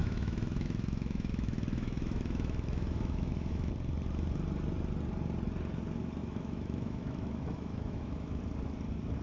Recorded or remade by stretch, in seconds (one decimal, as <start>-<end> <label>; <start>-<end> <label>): 0.0-3.7 remade; 3.7-6.2 recorded; 6.2-8.4 remade; 8.4-9.2 recorded

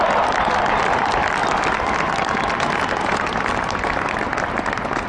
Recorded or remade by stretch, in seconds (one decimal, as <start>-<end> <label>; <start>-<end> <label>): 0.0-5.1 recorded

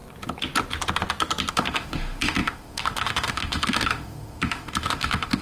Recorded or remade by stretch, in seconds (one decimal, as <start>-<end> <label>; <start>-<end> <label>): 0.0-1.5 recorded; 1.5-5.4 remade

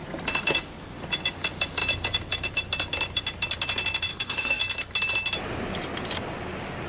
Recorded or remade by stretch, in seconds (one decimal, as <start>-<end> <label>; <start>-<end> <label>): 0.0-4.1 recorded; 4.1-4.6 remade; 4.6-6.9 recorded